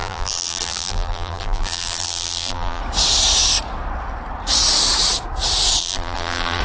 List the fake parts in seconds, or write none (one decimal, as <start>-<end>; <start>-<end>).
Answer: 0.0-2.8; 5.8-6.6